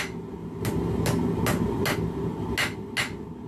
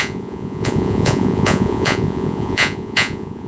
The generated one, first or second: second